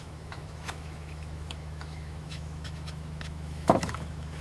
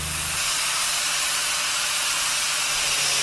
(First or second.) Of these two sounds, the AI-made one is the first